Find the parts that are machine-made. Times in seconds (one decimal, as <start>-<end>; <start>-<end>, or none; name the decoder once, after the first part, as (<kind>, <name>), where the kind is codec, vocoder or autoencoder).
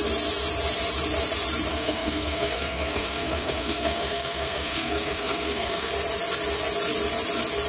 1.7-5.9 (codec, SNAC)